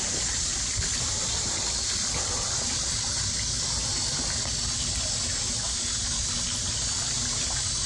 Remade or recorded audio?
recorded